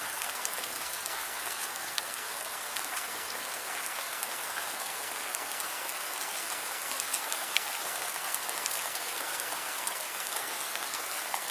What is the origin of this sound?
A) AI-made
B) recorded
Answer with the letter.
A